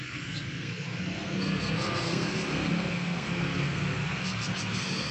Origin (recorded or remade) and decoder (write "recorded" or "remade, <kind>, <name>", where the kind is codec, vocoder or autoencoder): remade, codec, SNAC